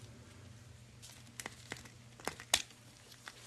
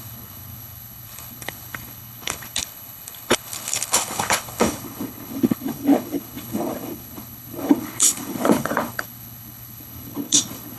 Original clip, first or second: first